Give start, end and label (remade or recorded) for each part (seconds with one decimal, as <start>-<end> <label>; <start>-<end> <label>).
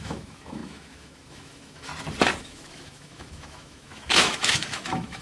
0.0-1.9 remade; 1.9-2.4 recorded; 2.4-5.2 remade